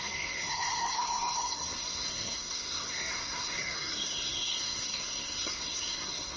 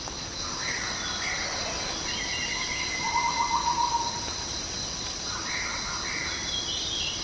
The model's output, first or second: first